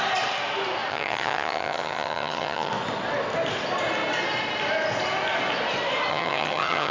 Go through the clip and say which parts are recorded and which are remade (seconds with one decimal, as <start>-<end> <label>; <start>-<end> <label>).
0.0-0.9 recorded; 0.9-2.7 remade; 2.7-6.1 recorded; 6.1-6.9 remade